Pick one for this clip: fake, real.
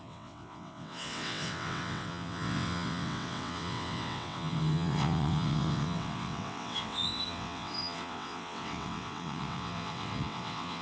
fake